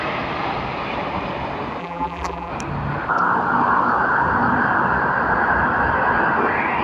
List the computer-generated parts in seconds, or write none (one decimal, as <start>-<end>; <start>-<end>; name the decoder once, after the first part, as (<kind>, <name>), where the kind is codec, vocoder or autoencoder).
1.8-2.5 (vocoder, BigVGAN v2)